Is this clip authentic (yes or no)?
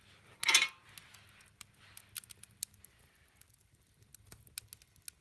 yes